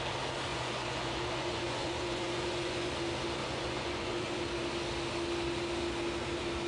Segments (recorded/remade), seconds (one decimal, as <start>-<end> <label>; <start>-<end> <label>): 0.0-0.5 recorded; 0.5-2.9 remade; 2.9-3.4 recorded; 3.4-4.4 remade; 4.4-6.7 recorded

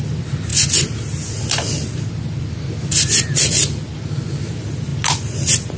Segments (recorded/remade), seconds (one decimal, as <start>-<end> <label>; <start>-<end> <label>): 0.0-5.8 recorded

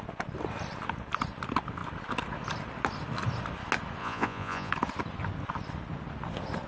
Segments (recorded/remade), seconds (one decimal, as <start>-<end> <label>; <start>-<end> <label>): 0.0-4.0 recorded; 4.0-4.7 remade; 4.7-6.7 recorded

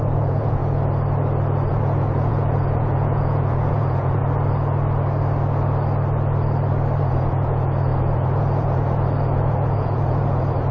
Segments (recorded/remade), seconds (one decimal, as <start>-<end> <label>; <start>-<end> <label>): 0.0-0.6 remade; 0.6-1.7 recorded; 1.7-4.2 remade; 4.2-7.0 recorded; 7.0-10.7 remade

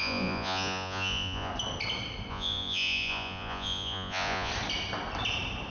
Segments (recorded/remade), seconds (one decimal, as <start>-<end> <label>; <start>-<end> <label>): 0.0-1.5 remade; 1.5-2.3 recorded; 2.3-4.5 remade; 4.5-5.7 recorded

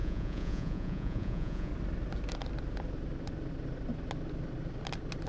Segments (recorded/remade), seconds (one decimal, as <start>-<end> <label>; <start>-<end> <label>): 0.0-1.7 remade; 1.7-5.3 recorded

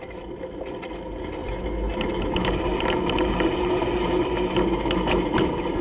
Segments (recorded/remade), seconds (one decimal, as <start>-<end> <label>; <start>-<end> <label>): 0.0-5.8 recorded

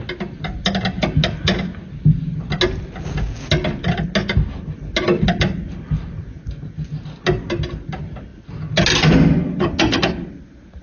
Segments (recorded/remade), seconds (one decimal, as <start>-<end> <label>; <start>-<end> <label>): 0.0-10.8 recorded